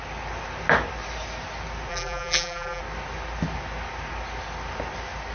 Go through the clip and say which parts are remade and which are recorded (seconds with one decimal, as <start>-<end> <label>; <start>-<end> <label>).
0.0-1.9 recorded; 1.9-2.8 remade; 2.8-5.3 recorded